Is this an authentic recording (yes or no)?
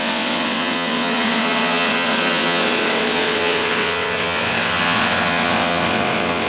no